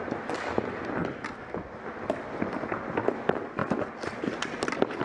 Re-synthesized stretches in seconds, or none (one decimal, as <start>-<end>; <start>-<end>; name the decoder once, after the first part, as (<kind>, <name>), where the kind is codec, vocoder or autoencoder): none